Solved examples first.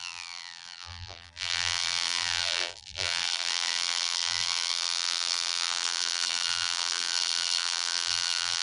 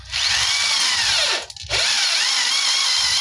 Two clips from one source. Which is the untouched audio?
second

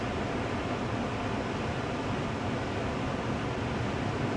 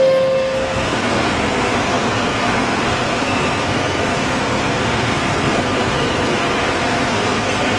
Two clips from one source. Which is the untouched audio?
first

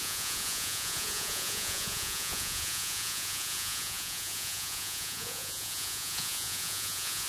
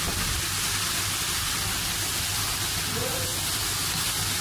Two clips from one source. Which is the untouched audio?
second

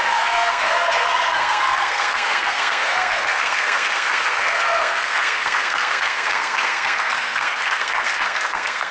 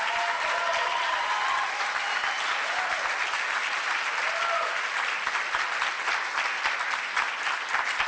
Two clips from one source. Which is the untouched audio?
second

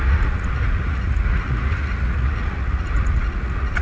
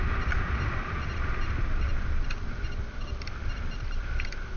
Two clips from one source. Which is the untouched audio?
second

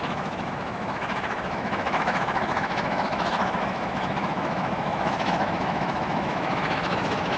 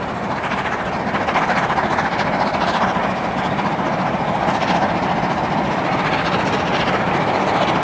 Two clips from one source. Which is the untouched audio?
second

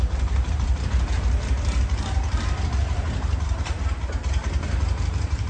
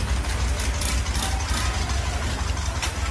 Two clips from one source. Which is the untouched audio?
second